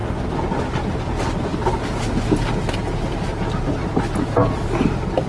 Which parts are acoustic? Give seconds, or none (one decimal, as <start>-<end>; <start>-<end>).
0.0-5.3